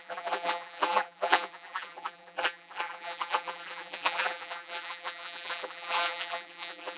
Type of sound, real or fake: fake